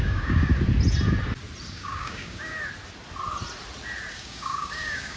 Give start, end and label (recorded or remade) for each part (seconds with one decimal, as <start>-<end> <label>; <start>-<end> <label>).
0.0-0.5 remade; 0.5-1.7 recorded; 1.7-2.5 remade; 2.5-4.1 recorded; 4.1-5.2 remade